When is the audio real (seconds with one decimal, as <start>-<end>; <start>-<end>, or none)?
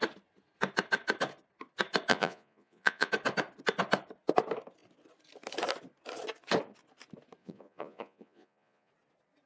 0.0-2.1; 3.1-7.4; 8.9-9.5